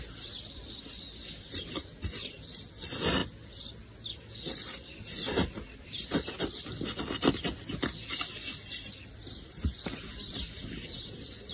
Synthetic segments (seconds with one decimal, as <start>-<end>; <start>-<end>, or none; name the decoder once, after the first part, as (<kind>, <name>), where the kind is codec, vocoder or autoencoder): none